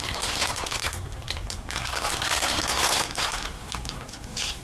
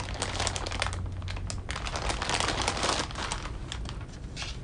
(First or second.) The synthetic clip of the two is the first